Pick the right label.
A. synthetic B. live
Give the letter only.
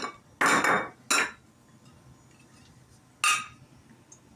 B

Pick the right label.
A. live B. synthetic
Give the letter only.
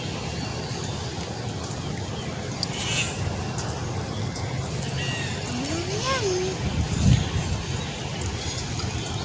A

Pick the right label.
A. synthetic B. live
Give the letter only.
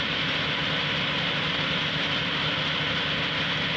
B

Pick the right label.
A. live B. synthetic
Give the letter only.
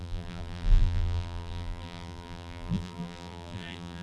B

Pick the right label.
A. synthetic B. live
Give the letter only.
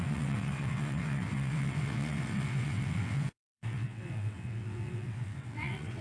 A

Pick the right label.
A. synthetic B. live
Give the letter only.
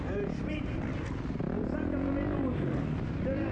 B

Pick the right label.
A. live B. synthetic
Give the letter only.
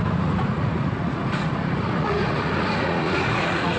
B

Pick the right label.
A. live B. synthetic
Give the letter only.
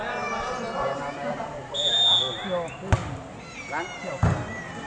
A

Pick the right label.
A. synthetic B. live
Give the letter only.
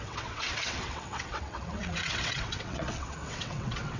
A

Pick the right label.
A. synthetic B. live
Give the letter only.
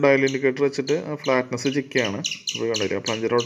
B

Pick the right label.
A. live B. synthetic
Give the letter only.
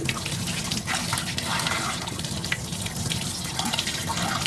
A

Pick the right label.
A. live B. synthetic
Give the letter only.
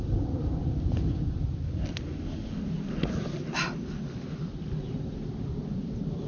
A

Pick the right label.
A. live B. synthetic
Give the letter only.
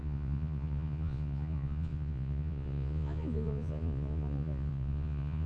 B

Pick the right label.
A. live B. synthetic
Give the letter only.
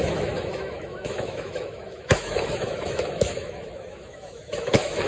B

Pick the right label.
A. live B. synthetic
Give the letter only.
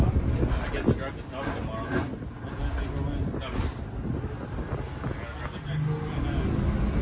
A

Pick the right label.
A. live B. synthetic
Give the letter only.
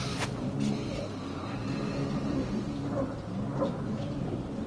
A